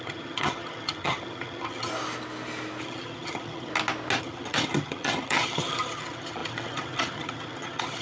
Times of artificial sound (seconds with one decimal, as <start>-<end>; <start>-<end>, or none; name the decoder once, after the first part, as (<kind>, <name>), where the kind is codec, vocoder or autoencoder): 0.0-1.9 (vocoder, HiFi-GAN); 2.8-3.7; 4.2-8.0

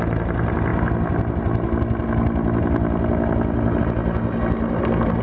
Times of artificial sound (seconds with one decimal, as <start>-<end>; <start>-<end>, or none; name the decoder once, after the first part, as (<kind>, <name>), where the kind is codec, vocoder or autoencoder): none

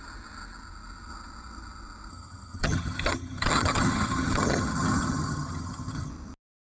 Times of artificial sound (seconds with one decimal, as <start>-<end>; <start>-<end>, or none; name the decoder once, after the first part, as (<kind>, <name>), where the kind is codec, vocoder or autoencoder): 2.1-6.1 (vocoder, HiFi-GAN)

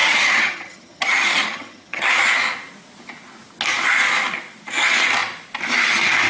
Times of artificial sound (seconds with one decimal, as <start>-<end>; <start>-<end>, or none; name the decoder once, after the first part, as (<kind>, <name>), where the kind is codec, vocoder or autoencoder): 0.0-2.1 (vocoder, HiFi-GAN)

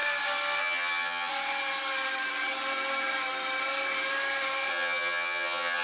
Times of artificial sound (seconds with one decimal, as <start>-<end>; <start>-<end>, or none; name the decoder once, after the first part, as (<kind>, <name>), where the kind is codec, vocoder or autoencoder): 0.6-1.3 (vocoder, HiFi-GAN); 4.7-5.8